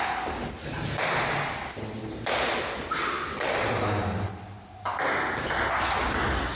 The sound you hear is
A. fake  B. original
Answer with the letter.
B